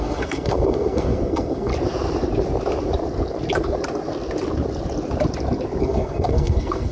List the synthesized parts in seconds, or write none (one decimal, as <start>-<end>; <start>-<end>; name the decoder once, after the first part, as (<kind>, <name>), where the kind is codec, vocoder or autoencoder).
0.0-1.7 (codec, SNAC); 5.8-6.9